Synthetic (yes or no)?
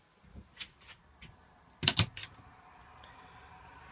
no